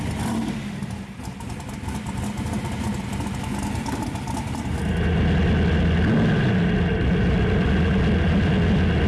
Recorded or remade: recorded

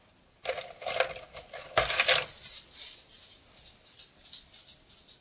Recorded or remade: recorded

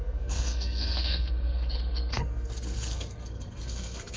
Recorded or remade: remade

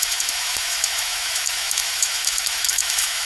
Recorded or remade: remade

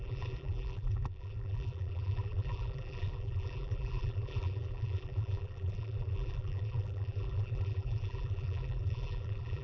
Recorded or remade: remade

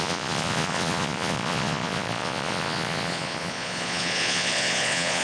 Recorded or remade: remade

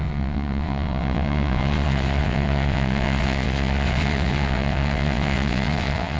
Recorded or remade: remade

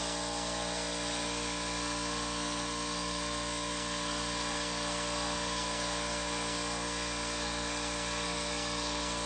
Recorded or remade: remade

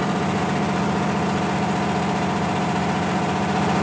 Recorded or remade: recorded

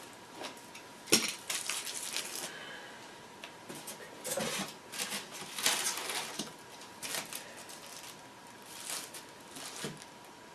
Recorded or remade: recorded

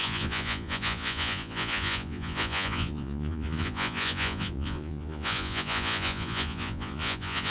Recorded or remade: remade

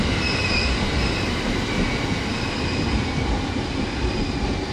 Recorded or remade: recorded